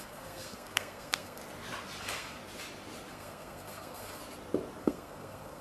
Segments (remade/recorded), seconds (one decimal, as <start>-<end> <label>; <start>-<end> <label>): 0.0-1.4 remade; 1.4-2.0 recorded; 2.0-2.4 remade; 2.4-3.1 recorded; 3.1-4.2 remade; 4.2-4.8 recorded; 4.8-5.6 remade